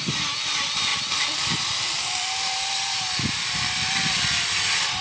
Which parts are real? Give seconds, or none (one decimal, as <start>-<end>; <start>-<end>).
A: 0.0-0.9; 3.9-5.0